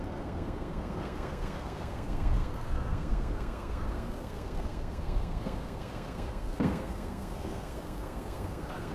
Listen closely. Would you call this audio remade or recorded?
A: remade